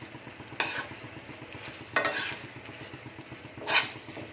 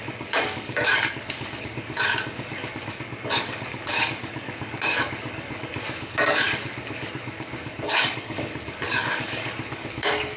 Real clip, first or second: first